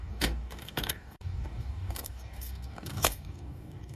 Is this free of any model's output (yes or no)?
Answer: no